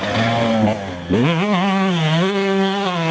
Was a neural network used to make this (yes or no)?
no